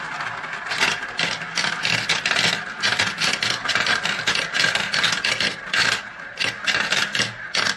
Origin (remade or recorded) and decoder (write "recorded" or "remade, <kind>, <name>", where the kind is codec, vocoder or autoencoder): recorded